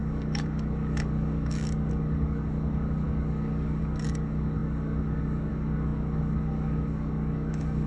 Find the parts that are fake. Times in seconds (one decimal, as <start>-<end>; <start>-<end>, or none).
0.0-7.9